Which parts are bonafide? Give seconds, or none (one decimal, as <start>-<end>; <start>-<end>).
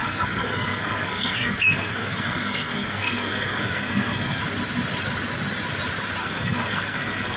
4.4-6.2